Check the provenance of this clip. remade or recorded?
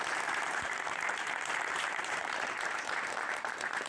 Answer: remade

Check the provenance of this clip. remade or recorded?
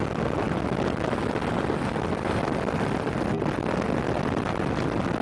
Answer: recorded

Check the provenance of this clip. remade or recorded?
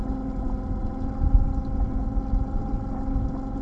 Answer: recorded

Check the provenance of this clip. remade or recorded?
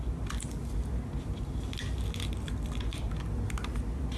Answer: recorded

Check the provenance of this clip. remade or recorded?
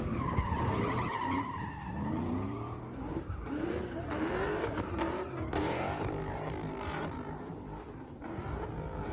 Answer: remade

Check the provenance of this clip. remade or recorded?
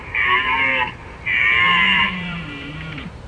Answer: remade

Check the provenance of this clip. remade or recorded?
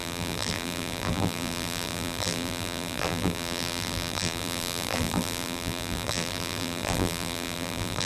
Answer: remade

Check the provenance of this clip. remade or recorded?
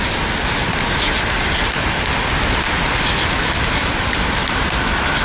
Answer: recorded